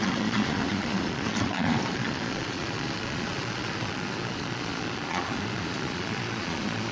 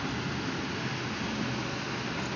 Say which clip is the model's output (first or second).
first